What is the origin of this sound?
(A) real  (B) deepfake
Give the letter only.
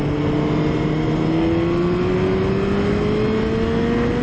A